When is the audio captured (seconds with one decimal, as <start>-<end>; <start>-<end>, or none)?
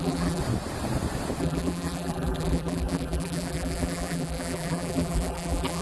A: 0.4-1.4